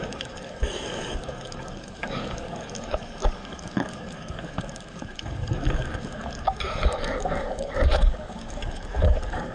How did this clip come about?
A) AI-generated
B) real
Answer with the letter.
A